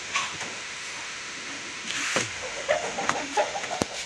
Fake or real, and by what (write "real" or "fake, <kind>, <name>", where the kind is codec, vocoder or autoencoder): fake, autoencoder, DAC-VAE